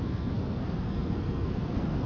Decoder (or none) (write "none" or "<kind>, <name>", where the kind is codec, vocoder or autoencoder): codec, SNAC